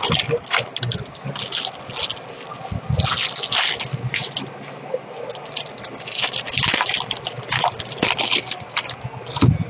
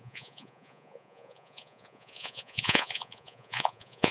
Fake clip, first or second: second